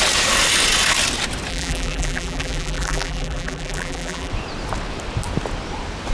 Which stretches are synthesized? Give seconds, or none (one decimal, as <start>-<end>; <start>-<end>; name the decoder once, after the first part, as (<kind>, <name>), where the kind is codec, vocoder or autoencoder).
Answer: 1.5-4.3 (vocoder, BigVGAN v2)